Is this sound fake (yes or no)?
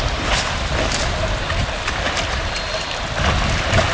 yes